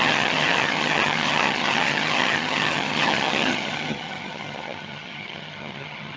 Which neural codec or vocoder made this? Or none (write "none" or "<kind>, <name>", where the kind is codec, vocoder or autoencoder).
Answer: vocoder, HiFi-GAN